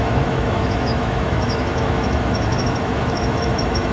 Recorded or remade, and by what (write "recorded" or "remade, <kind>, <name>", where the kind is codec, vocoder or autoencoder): remade, autoencoder, DAC-VAE